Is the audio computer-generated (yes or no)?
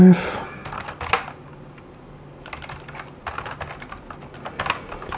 no